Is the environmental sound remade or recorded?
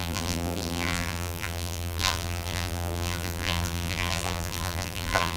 remade